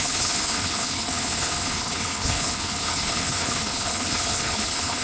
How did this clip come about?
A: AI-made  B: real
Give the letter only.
A